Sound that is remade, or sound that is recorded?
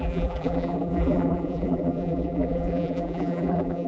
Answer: remade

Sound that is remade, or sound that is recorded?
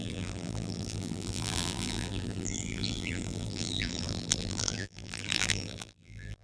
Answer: remade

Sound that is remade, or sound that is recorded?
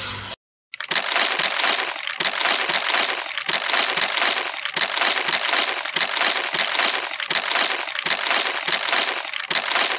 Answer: recorded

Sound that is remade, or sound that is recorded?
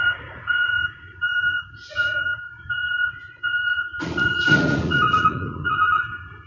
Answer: remade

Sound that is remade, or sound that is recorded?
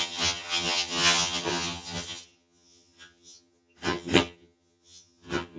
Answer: remade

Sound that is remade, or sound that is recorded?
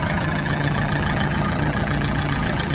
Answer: remade